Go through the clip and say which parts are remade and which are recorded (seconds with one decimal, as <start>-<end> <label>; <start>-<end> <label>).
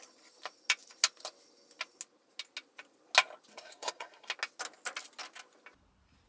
0.0-3.5 recorded; 3.5-4.3 remade; 4.3-6.3 recorded